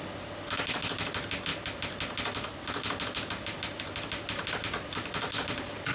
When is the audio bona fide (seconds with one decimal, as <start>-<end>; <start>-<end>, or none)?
0.0-5.9